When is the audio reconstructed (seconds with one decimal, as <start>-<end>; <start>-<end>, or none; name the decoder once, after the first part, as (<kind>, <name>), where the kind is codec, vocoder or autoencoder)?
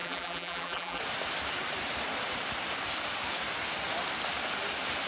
0.0-1.0 (vocoder, BigVGAN v2)